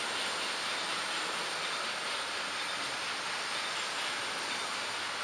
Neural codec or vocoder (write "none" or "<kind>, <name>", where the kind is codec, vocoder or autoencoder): none